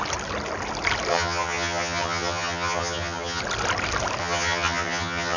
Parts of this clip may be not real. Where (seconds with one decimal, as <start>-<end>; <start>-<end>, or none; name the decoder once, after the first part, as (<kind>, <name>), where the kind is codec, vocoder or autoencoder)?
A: 1.1-3.4 (vocoder, HiFi-GAN); 4.2-5.4